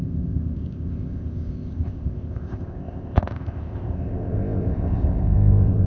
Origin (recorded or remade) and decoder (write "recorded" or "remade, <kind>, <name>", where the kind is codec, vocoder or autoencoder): remade, codec, ZipCodec